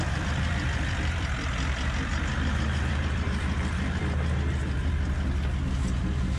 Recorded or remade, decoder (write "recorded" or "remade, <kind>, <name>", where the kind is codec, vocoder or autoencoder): remade, vocoder, BigVGAN v2